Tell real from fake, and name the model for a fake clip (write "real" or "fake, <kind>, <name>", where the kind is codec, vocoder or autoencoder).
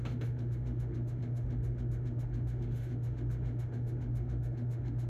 fake, autoencoder, DAC-VAE